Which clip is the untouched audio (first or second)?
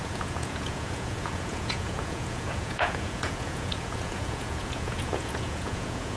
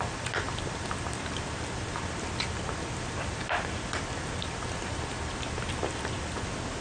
second